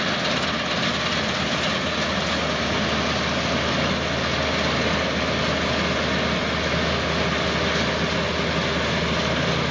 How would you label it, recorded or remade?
recorded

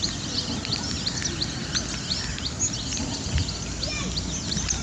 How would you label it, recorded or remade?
recorded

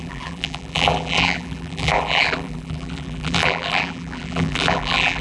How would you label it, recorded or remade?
remade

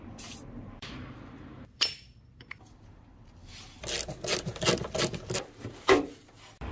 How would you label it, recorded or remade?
remade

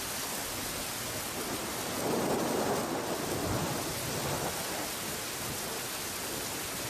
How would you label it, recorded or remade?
recorded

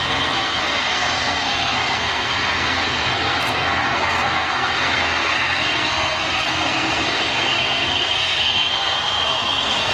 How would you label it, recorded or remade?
remade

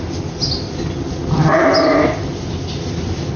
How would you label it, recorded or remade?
recorded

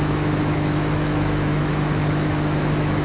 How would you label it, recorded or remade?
remade